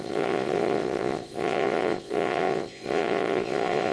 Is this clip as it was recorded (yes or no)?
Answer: no